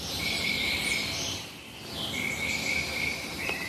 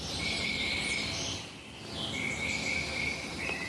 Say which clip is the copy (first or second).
first